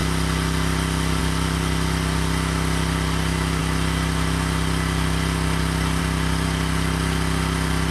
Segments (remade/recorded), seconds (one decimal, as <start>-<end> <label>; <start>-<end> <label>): 0.0-7.9 recorded